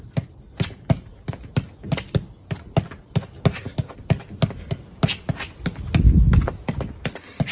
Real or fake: real